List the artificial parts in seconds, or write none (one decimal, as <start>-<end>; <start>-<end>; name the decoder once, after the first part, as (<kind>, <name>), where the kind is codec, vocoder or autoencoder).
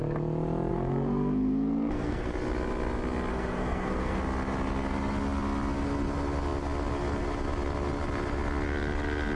0.7-2.3 (codec, SNAC); 3.3-4.2